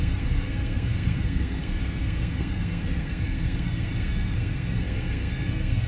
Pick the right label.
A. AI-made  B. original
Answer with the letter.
A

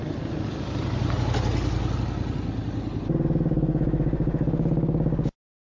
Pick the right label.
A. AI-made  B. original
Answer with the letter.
B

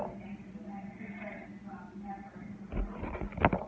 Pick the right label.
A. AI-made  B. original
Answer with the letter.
B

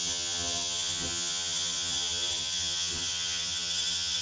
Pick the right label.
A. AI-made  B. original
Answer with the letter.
A